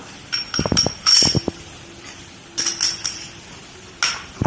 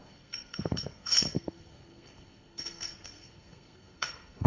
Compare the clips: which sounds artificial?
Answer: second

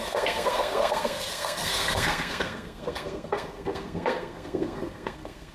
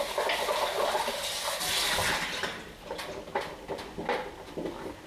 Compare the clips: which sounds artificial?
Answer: first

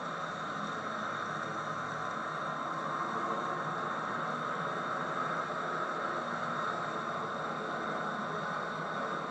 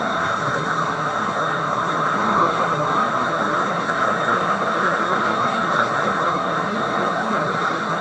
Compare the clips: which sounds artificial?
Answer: second